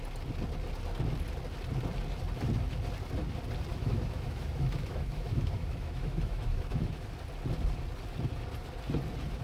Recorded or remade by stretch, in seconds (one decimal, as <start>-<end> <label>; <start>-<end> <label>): 0.0-3.7 recorded; 3.7-7.1 remade; 7.1-9.4 recorded